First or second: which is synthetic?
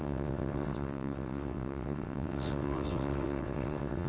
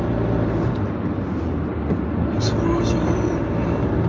first